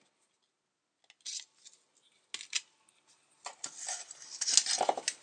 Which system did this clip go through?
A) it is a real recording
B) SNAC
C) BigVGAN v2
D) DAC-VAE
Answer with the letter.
A